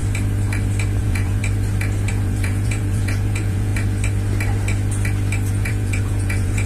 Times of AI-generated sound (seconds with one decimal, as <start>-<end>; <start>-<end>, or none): 1.0-1.4; 2.1-3.7; 5.5-6.7